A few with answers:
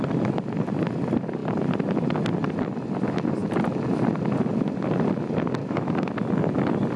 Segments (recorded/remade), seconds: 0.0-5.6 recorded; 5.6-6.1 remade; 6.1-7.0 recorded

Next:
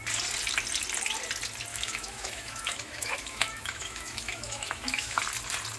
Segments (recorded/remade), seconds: 0.0-1.7 recorded; 1.7-5.2 remade; 5.2-5.8 recorded

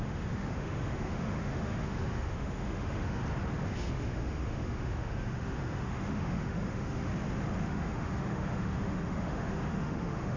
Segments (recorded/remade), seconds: 0.0-3.2 remade; 3.2-3.7 recorded; 3.7-7.1 remade; 7.1-7.6 recorded; 7.6-10.4 remade

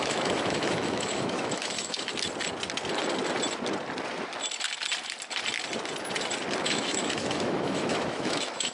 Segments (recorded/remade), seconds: 0.0-2.1 remade; 2.1-6.6 recorded; 6.6-8.7 remade

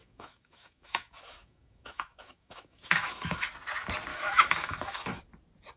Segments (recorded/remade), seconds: 0.0-3.5 remade; 3.5-4.1 recorded; 4.1-5.2 remade; 5.2-5.8 recorded